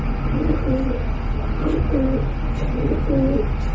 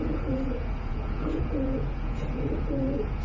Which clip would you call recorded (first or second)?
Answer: first